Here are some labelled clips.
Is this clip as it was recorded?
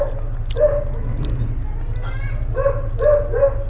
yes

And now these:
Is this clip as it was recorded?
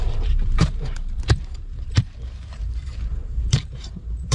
no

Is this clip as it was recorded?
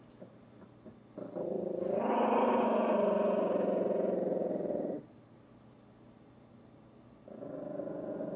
yes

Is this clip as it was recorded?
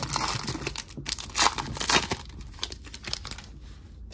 yes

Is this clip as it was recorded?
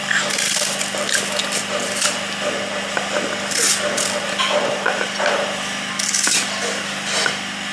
no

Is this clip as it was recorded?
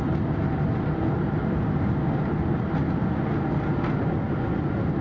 yes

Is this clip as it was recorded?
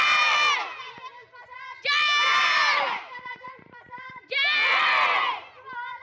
yes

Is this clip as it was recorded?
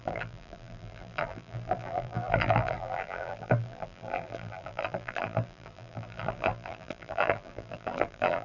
no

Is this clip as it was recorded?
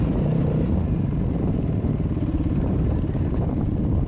no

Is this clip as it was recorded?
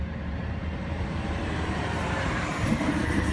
no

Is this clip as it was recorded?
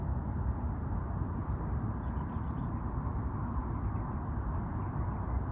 no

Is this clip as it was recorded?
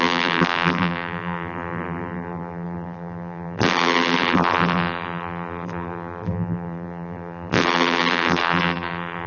no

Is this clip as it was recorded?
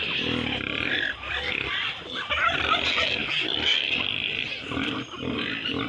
yes